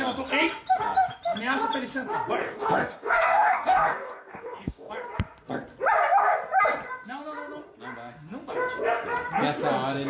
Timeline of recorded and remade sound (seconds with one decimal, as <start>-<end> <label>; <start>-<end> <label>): 0.0-2.4 recorded; 2.4-4.9 remade; 4.9-10.1 recorded